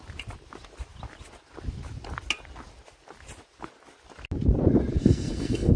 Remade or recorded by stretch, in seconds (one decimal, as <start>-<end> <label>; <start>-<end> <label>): 0.0-5.0 recorded; 5.0-5.8 remade